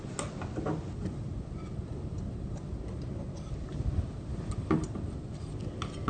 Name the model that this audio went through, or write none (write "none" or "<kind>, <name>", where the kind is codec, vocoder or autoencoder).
none